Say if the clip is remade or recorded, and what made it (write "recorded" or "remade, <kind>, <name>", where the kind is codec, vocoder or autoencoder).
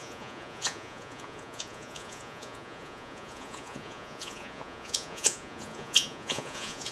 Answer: remade, vocoder, Vocos